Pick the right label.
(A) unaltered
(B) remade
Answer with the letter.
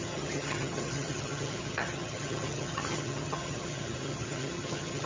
B